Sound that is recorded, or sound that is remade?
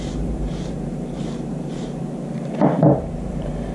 remade